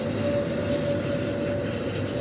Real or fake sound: real